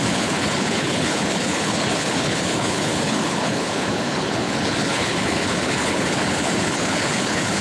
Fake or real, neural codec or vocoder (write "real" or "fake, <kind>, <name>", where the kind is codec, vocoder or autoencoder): fake, codec, HILCodec